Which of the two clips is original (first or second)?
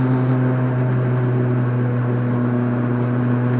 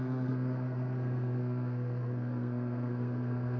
first